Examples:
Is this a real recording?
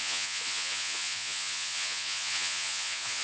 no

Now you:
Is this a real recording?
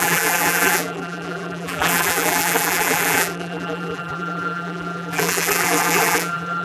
no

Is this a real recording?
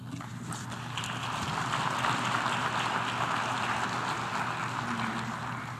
yes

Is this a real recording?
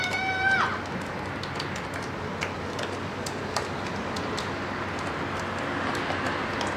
yes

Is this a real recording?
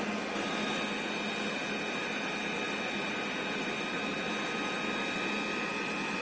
yes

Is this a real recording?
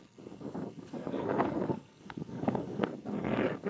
no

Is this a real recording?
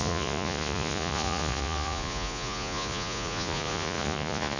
no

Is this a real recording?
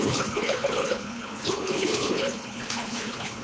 no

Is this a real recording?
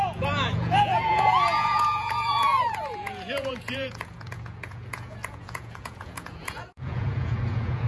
no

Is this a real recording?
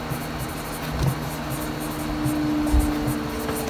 yes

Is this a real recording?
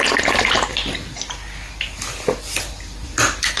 yes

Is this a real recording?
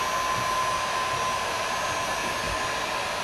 yes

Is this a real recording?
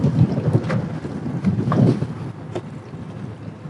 yes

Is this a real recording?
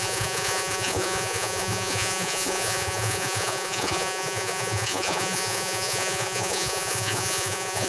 no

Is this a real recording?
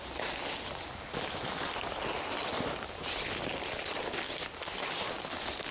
yes